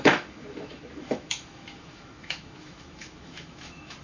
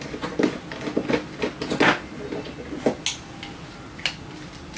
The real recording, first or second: second